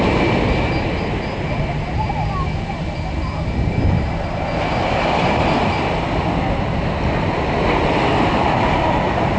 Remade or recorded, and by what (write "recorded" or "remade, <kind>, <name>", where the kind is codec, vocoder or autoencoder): recorded